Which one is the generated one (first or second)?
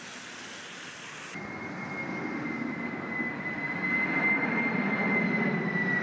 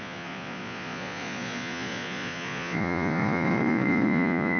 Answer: second